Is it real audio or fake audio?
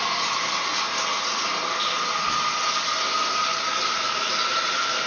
real